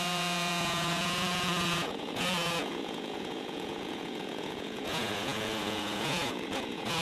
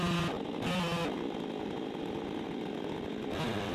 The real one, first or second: second